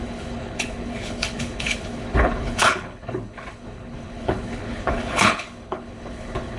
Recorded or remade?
remade